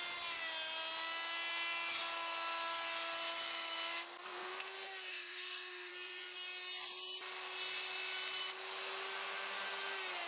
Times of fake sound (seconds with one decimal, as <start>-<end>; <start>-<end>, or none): 5.1-5.9

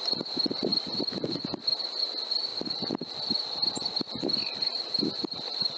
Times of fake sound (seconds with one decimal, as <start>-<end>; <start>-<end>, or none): none

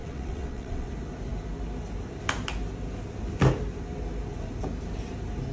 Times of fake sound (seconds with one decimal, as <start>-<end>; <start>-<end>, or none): 0.0-0.9

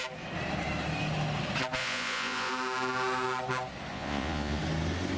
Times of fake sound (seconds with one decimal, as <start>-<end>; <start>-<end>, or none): 1.8-2.5; 3.9-4.6

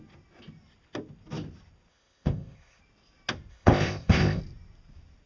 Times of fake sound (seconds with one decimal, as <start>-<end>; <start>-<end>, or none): 1.9-2.8; 3.5-4.4

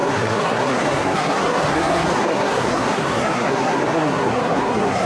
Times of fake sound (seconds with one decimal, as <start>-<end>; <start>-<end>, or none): 0.0-5.1